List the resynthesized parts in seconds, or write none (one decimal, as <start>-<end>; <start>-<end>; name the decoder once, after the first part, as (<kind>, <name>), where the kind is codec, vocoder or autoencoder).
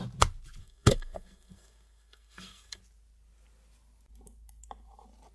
0.6-2.8 (codec, SNAC)